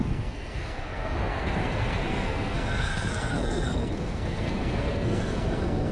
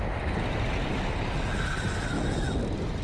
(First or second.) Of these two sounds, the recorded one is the second